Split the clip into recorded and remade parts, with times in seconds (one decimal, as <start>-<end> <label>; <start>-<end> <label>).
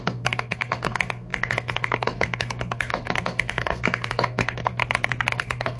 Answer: 0.0-4.8 remade; 4.8-5.3 recorded; 5.3-5.8 remade